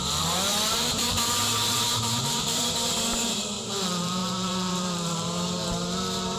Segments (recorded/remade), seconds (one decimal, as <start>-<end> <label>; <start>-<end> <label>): 0.0-2.6 remade; 2.6-3.2 recorded; 3.2-6.4 remade